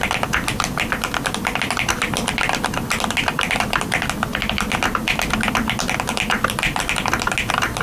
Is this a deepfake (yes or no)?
no